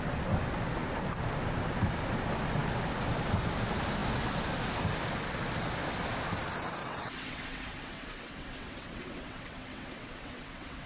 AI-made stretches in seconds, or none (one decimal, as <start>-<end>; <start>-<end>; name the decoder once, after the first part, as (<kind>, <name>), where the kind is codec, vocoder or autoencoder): 6.8-10.9 (vocoder, WaveNeXt)